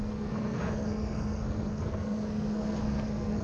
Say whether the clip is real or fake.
fake